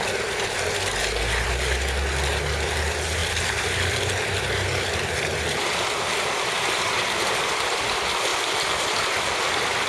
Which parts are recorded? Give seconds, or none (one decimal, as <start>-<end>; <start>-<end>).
0.0-9.9